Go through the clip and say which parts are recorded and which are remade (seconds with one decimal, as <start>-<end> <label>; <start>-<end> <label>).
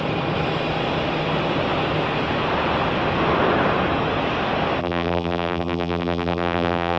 0.0-4.8 recorded; 4.8-7.0 remade